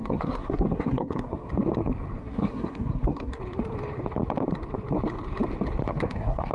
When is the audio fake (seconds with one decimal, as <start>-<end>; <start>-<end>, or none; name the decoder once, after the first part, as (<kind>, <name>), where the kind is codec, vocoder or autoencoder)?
0.0-1.5 (codec, SNAC); 2.2-3.4; 5.9-6.5